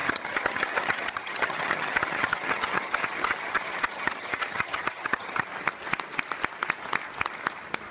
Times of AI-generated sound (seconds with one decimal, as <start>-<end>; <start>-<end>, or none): 0.0-5.5